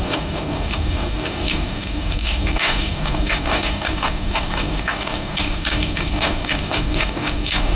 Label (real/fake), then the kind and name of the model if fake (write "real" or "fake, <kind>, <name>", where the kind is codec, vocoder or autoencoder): fake, codec, DAC